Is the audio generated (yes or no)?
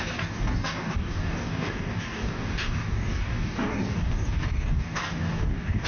yes